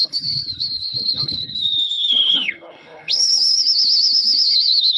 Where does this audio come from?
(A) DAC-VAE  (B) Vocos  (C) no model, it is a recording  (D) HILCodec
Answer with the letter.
D